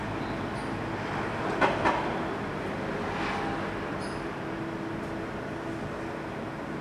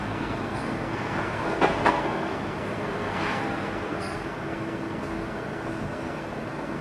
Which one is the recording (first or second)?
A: first